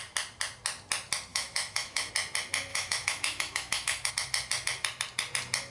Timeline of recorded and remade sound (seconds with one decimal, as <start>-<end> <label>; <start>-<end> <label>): 0.0-1.3 recorded; 1.3-2.1 remade; 2.1-2.7 recorded; 2.7-4.1 remade; 4.1-5.7 recorded

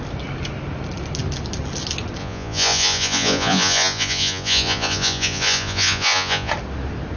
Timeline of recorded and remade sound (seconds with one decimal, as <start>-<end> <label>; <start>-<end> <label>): 0.0-2.2 recorded; 2.2-6.5 remade; 6.5-7.2 recorded

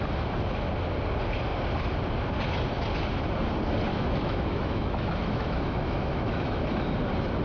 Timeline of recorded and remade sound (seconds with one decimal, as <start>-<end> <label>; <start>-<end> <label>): 0.0-3.9 recorded; 3.9-6.6 remade; 6.6-7.4 recorded

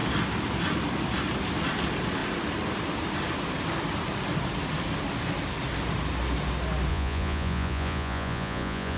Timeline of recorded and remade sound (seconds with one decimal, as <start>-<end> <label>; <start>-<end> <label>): 0.0-6.9 recorded; 6.9-9.0 remade

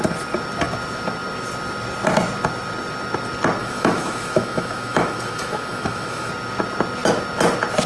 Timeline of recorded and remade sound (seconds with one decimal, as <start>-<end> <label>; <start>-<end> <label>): 0.0-3.6 recorded; 3.6-6.3 remade; 6.3-7.9 recorded

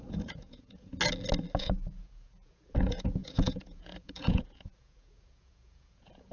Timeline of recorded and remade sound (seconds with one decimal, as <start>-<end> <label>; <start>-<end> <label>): 0.0-0.9 remade; 0.9-1.6 recorded; 1.6-6.3 remade